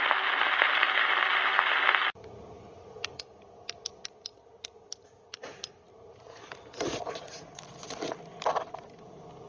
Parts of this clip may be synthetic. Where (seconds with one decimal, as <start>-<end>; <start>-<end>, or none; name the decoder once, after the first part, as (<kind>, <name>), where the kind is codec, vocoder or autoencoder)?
none